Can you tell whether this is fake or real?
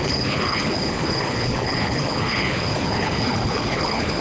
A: fake